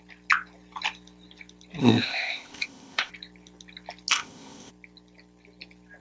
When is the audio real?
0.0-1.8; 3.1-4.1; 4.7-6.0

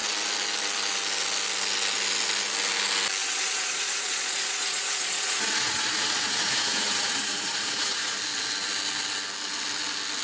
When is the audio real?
0.0-3.2; 8.2-10.2

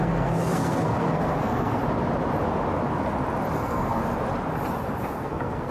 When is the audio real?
1.8-3.6; 4.0-5.0

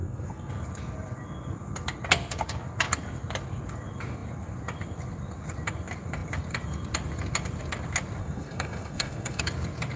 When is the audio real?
0.5-8.2; 9.4-10.0

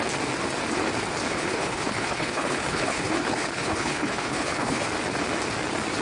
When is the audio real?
0.0-1.3; 4.9-6.0

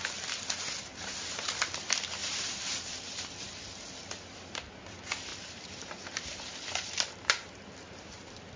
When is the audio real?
0.0-0.9; 1.5-2.2; 2.8-5.3

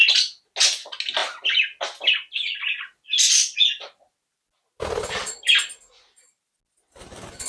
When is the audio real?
0.0-7.5

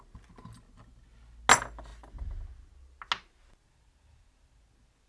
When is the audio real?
0.0-5.1